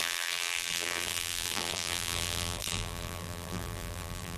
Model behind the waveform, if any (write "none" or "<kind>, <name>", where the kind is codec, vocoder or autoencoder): vocoder, BigVGAN v2